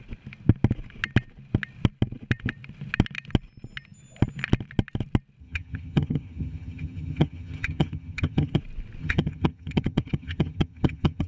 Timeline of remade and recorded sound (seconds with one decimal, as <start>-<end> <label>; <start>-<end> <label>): 0.0-5.4 recorded; 5.4-8.6 remade; 8.6-9.0 recorded; 9.0-11.3 remade